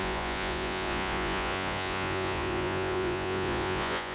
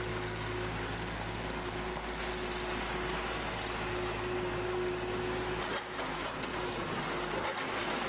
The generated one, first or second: first